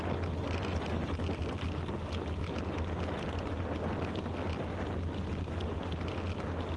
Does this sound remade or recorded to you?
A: recorded